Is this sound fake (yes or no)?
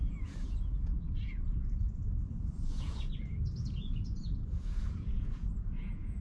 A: yes